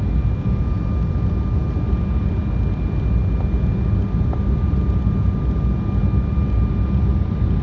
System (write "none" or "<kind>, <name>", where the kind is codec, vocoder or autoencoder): none